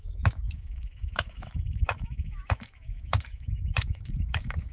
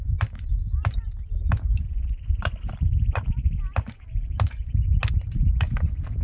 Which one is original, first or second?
second